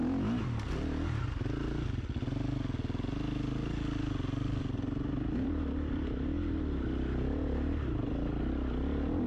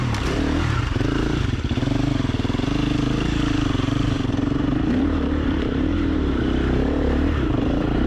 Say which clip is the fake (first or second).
second